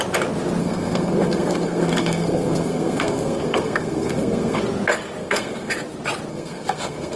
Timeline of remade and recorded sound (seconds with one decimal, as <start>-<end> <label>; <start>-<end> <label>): 0.0-0.6 recorded; 0.6-4.6 remade; 4.6-5.2 recorded; 5.2-5.7 remade; 5.7-6.3 recorded; 6.3-7.2 remade